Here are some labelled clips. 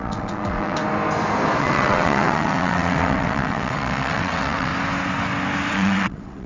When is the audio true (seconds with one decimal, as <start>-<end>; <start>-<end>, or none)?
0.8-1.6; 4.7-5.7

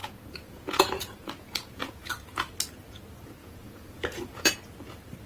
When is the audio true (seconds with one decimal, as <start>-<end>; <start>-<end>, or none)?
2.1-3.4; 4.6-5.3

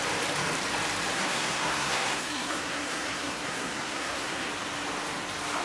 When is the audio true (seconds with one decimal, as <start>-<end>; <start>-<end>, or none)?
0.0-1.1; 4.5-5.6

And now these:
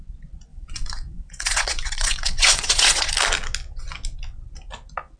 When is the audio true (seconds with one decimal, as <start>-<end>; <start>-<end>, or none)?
0.0-0.5; 3.1-5.2